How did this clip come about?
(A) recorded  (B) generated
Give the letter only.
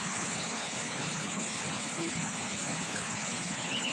B